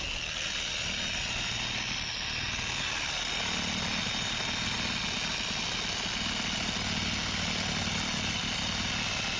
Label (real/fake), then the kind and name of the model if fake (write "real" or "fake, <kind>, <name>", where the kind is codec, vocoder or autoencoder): real